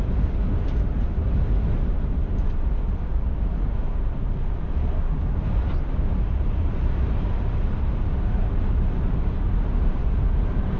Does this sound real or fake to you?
fake